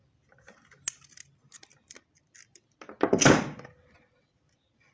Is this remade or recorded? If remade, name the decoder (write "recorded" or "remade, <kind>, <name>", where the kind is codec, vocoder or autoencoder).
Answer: recorded